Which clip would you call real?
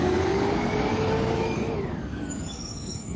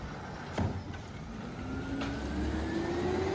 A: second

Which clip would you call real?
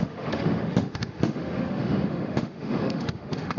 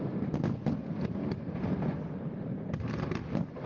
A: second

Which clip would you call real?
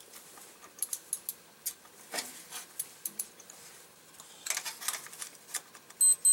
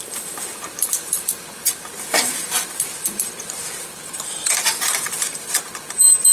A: first